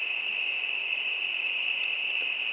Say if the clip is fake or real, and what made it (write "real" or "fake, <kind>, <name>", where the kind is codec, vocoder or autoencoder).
real